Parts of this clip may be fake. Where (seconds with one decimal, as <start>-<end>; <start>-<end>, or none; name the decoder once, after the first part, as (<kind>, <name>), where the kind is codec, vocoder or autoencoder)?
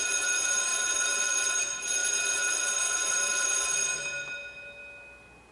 none